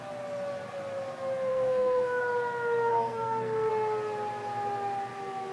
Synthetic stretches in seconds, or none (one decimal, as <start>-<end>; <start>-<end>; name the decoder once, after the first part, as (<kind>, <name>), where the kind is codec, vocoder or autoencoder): 1.5-2.2 (codec, SNAC); 2.9-3.7